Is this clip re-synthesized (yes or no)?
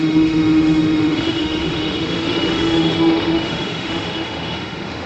yes